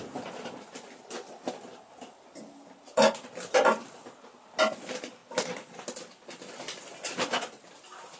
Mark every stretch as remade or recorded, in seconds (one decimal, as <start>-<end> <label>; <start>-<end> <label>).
0.0-8.2 recorded